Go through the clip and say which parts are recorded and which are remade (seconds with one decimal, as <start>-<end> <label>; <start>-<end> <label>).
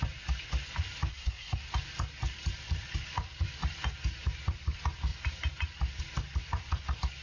0.0-1.1 recorded; 1.1-1.6 remade; 1.6-7.2 recorded